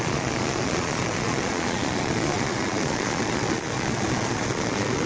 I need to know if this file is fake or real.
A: fake